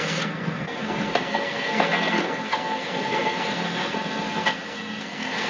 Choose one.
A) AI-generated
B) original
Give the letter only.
A